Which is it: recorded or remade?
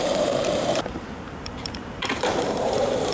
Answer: remade